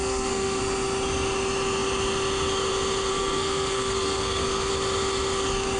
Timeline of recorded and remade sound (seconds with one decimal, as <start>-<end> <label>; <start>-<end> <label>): 0.0-0.6 remade; 0.6-3.1 recorded; 3.1-4.7 remade; 4.7-5.8 recorded